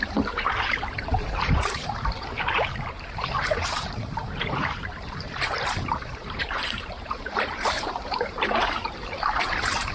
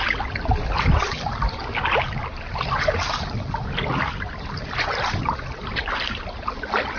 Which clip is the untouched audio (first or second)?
second